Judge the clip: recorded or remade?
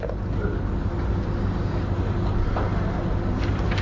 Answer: recorded